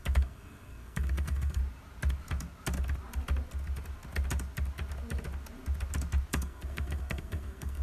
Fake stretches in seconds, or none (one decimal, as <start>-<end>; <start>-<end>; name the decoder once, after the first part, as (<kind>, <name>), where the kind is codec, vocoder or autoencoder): 0.0-1.6 (codec, SNAC); 6.3-7.8